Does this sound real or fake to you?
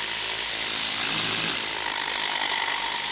real